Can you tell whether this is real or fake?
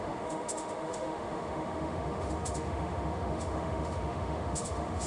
fake